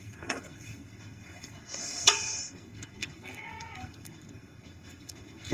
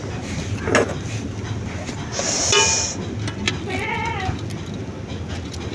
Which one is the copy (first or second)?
first